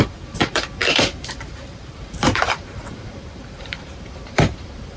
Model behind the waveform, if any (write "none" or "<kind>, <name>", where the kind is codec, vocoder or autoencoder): vocoder, BigVGAN v2